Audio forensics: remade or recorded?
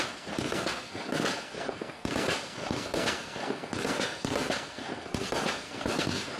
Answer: remade